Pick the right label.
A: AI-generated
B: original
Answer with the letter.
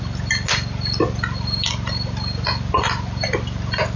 B